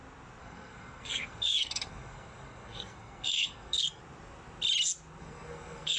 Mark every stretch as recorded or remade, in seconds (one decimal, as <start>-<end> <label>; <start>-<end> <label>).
0.0-0.4 recorded; 0.4-4.0 remade; 4.0-5.2 recorded; 5.2-6.0 remade